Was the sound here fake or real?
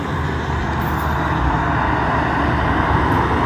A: real